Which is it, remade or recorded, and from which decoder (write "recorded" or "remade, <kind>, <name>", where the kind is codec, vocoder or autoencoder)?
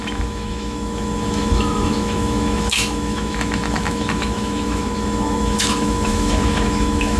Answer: remade, autoencoder, DAC-VAE